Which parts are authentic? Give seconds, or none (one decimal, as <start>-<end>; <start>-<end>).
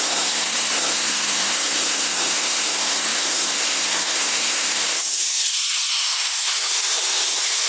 none